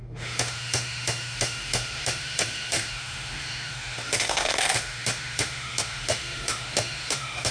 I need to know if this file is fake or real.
fake